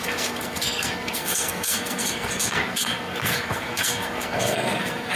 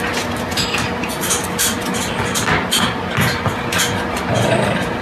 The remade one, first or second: first